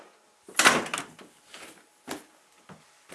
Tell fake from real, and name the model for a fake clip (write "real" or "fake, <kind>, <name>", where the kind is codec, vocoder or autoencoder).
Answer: real